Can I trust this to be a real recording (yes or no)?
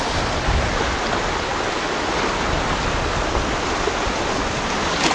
yes